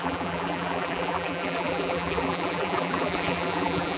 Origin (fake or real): fake